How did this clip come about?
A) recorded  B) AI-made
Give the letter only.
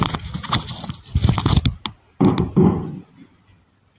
A